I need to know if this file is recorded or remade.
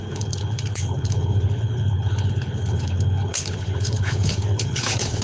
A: remade